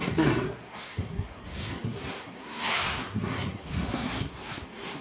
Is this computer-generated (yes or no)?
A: yes